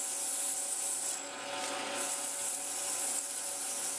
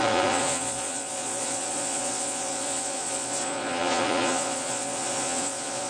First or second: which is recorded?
first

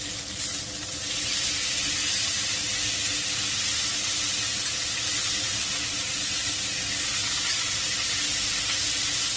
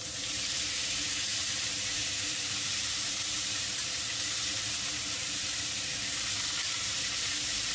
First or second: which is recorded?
first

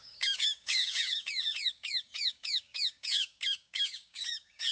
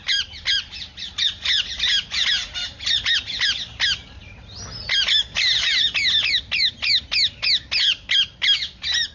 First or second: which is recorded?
second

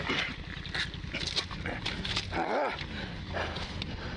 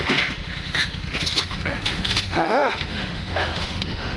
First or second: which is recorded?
first